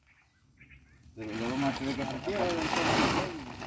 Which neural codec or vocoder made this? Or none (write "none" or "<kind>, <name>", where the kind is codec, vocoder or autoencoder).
none